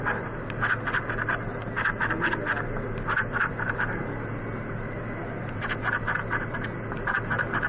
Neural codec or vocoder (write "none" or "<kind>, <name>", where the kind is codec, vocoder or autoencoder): none